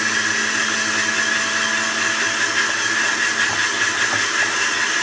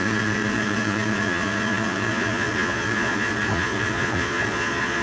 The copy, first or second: second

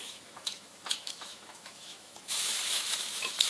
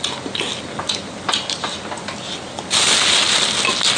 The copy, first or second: first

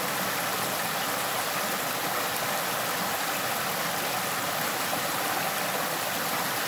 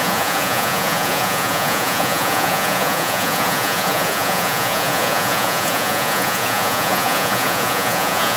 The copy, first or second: second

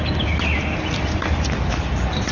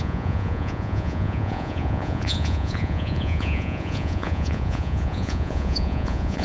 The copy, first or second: second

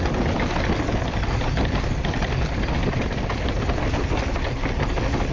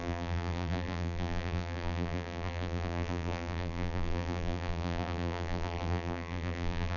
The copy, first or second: second